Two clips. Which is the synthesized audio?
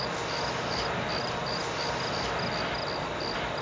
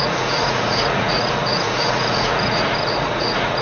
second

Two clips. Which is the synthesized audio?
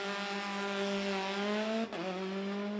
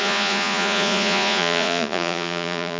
second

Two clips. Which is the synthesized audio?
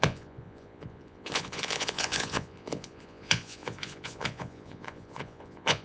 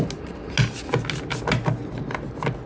first